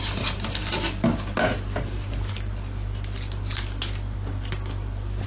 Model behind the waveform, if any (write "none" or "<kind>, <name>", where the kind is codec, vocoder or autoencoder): none